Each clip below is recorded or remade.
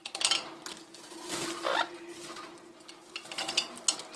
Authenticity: recorded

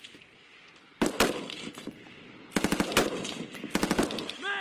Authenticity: recorded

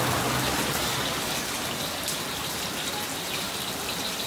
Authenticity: recorded